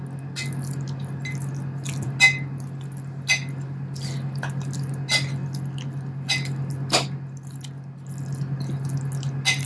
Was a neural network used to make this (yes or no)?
no